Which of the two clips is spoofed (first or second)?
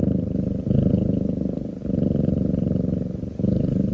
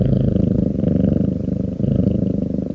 second